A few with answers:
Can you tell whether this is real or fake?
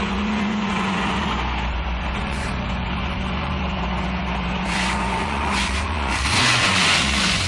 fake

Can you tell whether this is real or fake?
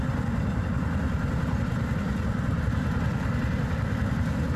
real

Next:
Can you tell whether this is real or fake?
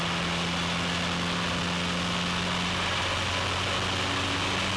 real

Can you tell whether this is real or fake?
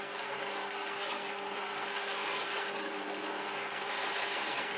fake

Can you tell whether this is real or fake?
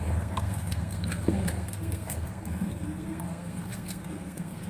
fake